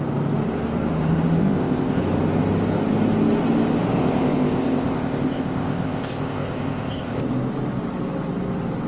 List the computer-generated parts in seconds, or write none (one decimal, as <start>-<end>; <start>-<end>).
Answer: 1.4-2.0; 4.0-7.2